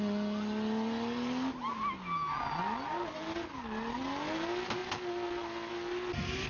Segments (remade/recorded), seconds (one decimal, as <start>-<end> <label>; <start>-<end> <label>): 0.0-6.5 recorded